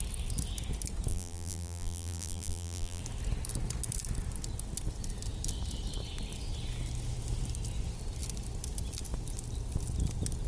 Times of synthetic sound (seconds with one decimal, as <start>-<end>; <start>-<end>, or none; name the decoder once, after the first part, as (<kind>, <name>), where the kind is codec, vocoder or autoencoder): 1.1-3.0 (vocoder, BigVGAN v2)